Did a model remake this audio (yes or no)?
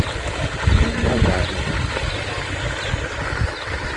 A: no